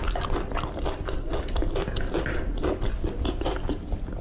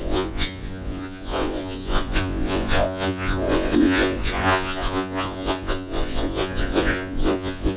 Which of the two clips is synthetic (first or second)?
second